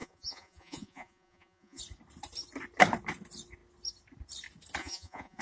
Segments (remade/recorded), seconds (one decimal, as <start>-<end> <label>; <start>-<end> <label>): 0.0-1.8 remade; 1.8-4.8 recorded; 4.8-5.4 remade